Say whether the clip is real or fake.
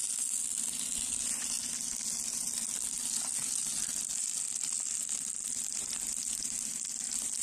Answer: real